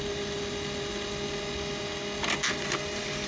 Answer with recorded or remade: recorded